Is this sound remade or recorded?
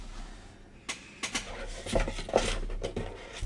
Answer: recorded